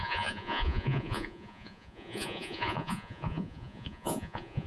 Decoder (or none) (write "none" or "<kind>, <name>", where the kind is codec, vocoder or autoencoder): vocoder, Vocos